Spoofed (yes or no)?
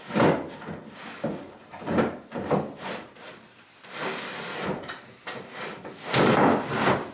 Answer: no